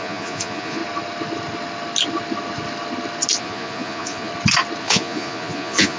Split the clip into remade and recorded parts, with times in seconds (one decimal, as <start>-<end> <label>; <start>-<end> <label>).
0.0-0.8 remade; 0.8-3.4 recorded; 3.4-4.3 remade; 4.3-4.8 recorded; 4.8-6.0 remade